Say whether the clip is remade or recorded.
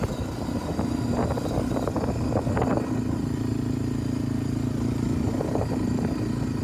recorded